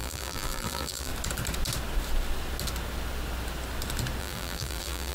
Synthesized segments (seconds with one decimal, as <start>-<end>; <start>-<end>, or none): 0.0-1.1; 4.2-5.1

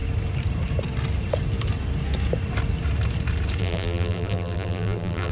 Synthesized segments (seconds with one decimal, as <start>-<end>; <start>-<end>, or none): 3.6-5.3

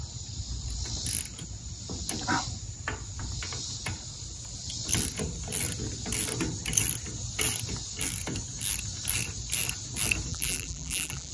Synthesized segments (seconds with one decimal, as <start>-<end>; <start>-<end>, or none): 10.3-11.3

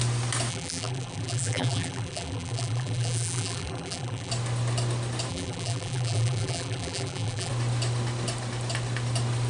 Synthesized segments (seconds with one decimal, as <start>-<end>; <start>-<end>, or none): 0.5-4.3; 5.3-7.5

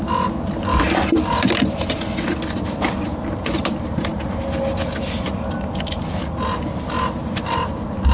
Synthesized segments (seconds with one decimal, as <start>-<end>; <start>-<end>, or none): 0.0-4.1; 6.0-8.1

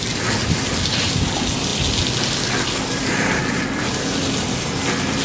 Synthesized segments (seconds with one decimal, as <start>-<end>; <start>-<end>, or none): none